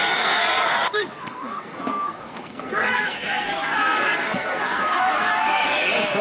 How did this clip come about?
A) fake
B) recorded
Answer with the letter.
A